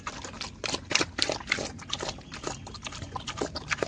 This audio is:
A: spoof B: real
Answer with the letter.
B